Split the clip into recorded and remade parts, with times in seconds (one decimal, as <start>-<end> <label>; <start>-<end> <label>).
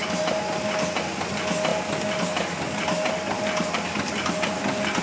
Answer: 0.0-5.0 recorded